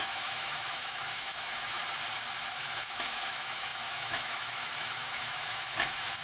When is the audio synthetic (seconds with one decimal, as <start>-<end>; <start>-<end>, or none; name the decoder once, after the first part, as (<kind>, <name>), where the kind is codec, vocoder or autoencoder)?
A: 0.0-1.8 (autoencoder, DAC-VAE); 2.4-6.2